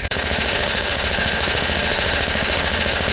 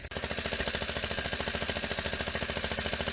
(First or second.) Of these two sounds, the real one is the second